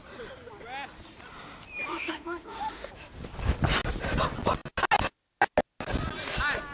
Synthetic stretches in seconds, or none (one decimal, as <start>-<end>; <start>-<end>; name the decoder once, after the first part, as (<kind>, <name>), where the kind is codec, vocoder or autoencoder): 1.9-2.9 (autoencoder, DAC-VAE)